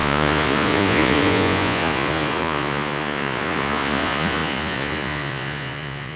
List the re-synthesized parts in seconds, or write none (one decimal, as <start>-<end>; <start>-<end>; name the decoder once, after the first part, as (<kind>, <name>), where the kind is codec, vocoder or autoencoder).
0.0-6.2 (vocoder, Vocos)